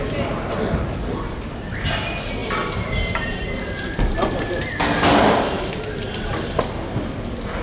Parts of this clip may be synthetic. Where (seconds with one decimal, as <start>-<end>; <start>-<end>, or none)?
none